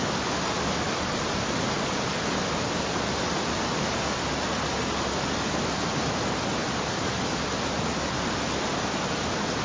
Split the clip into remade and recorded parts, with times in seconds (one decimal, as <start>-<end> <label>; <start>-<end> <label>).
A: 0.0-9.6 recorded